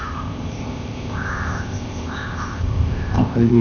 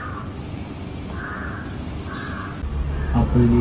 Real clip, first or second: second